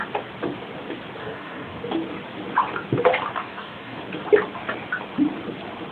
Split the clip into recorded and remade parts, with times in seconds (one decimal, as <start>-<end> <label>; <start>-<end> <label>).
0.0-1.2 recorded; 1.2-1.8 remade; 1.8-3.3 recorded; 3.3-4.0 remade; 4.0-5.9 recorded